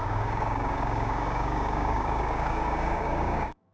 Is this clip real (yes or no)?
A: no